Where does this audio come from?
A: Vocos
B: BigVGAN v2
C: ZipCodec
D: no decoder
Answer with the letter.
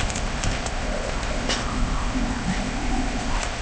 C